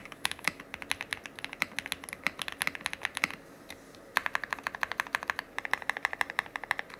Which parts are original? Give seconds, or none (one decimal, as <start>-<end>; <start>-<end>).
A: 0.6-7.0